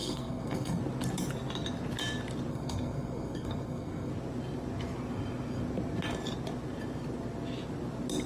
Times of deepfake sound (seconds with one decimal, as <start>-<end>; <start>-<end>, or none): 0.0-0.8; 2.5-4.1